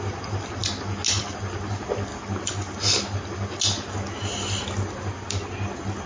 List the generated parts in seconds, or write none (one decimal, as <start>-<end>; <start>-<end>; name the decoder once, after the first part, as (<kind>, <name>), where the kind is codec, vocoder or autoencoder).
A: none